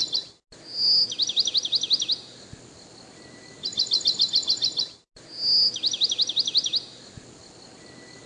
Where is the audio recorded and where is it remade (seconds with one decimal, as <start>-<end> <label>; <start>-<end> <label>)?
0.0-8.3 recorded